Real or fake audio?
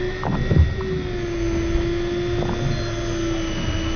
real